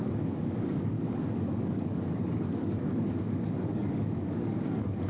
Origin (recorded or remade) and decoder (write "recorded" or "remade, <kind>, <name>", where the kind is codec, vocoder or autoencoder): remade, codec, DAC